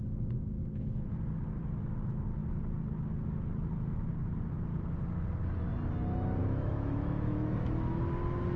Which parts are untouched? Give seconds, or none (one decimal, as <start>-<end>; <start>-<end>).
0.0-0.6; 1.1-6.4; 8.0-8.6